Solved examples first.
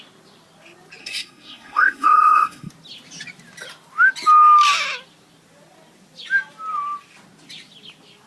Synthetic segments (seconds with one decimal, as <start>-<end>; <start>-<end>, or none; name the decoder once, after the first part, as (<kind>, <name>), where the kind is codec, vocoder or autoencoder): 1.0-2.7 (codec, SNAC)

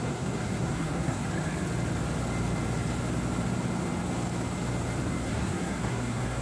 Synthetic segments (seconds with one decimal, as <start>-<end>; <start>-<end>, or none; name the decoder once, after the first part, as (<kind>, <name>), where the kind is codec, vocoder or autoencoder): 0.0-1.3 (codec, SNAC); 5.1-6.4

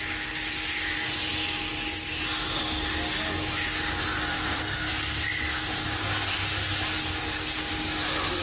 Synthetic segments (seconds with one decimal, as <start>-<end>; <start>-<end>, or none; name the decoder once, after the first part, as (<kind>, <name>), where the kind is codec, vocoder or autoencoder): 4.3-4.9 (codec, SNAC); 7.2-7.7

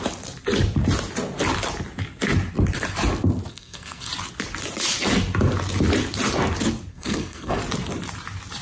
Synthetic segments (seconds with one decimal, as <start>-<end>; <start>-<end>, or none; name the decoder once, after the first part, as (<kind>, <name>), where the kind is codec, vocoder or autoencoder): 3.5-4.1 (codec, SNAC); 6.9-7.6

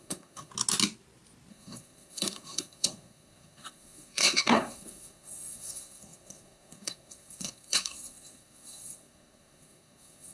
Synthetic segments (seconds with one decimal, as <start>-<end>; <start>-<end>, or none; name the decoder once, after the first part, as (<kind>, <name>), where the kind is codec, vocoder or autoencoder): 0.0-0.5 (codec, SNAC); 1.5-10.3

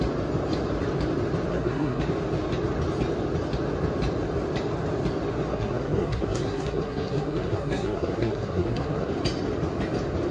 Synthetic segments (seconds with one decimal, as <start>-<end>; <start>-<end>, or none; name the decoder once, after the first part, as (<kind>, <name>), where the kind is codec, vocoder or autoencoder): 1.5-2.0 (codec, SNAC); 5.5-9.1

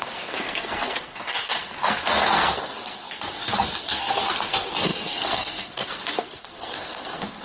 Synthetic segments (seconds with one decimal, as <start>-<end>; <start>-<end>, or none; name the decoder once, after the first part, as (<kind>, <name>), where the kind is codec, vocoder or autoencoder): 0.0-7.4 (codec, SNAC)